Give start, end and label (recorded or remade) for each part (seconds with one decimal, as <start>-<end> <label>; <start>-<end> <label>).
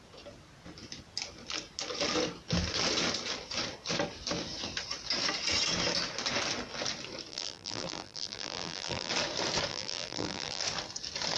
0.0-7.3 recorded; 7.3-9.1 remade; 9.1-9.7 recorded; 9.7-10.6 remade; 10.6-11.4 recorded